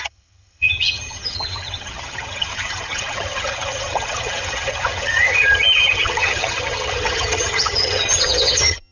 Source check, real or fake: fake